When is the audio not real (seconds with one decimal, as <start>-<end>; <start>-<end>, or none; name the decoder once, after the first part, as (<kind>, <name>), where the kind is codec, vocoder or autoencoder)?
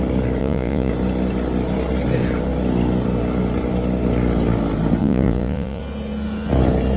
0.4-0.9 (vocoder, Vocos); 5.0-5.8